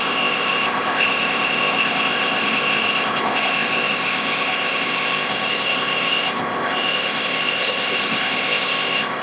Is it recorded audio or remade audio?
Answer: remade